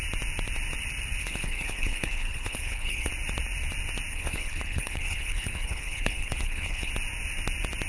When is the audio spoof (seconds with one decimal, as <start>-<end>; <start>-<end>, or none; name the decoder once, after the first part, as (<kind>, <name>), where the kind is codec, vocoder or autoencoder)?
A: 1.2-3.1 (codec, HILCodec); 4.1-6.9